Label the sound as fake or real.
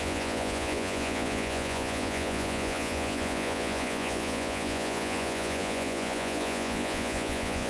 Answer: fake